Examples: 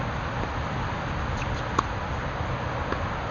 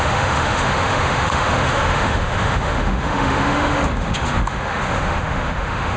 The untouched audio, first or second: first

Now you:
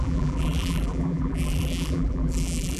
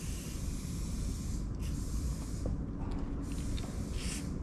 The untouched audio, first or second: second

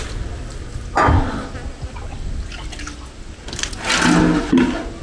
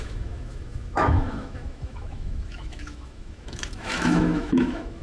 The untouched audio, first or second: first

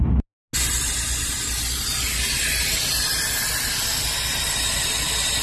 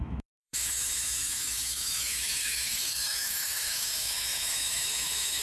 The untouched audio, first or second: first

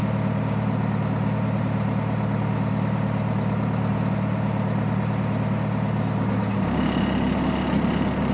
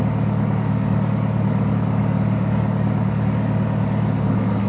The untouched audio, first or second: first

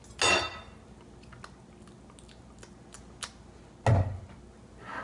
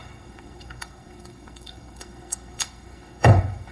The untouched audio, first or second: first